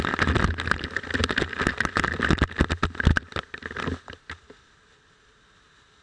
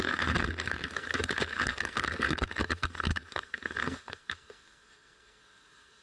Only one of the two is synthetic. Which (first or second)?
second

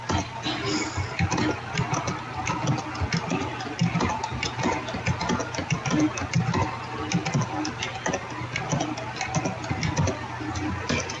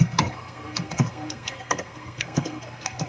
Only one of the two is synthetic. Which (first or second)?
second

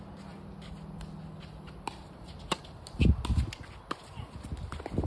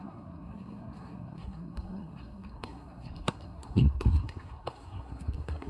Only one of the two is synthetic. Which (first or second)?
second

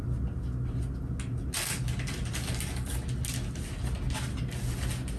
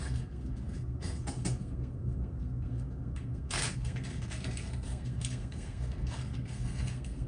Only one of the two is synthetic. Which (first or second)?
second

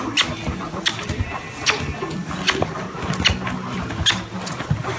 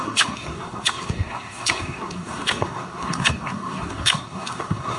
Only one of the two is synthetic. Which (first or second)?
second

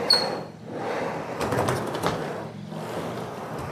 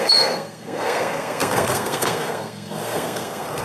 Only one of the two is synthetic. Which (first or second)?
second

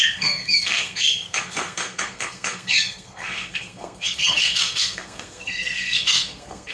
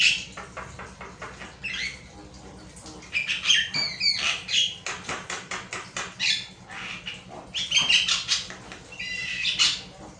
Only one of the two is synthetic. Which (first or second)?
first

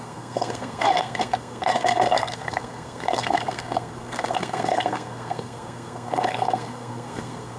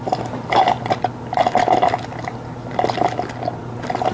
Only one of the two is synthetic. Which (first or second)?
first